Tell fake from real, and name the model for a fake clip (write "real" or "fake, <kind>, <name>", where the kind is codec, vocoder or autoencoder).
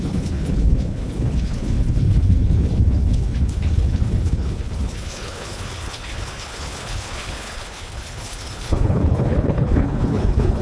fake, codec, HILCodec